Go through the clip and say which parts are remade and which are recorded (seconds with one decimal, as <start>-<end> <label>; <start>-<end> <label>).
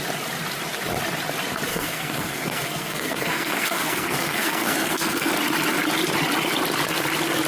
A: 0.0-1.7 recorded; 1.7-5.3 remade; 5.3-7.5 recorded